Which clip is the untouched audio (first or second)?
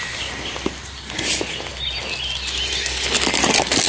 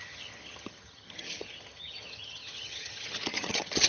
first